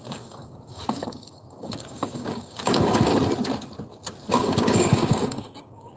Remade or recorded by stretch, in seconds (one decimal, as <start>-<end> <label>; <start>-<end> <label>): 0.0-3.1 remade; 3.1-4.3 recorded; 4.3-6.0 remade